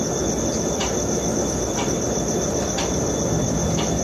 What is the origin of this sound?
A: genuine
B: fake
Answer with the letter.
A